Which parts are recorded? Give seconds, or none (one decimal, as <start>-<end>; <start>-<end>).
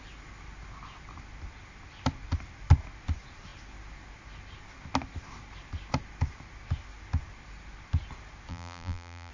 0.0-8.5